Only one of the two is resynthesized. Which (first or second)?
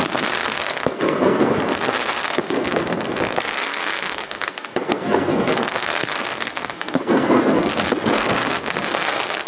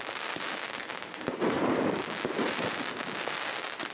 first